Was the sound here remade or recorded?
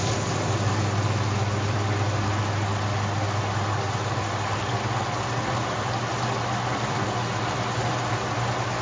recorded